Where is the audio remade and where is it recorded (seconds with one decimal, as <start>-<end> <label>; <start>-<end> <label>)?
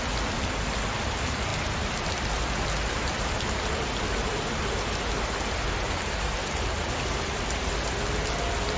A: 0.0-8.8 recorded